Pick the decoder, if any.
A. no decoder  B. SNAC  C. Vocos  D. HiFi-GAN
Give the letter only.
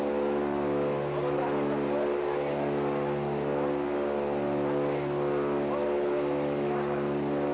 A